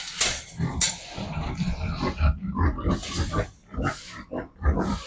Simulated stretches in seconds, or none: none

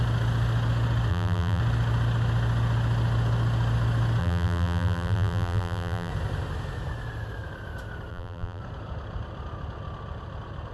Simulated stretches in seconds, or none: 1.1-1.6; 4.2-6.1; 8.1-8.6

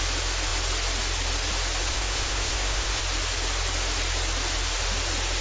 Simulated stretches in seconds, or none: 1.9-3.0